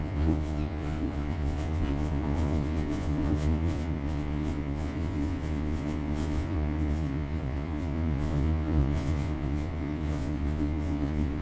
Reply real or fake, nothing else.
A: fake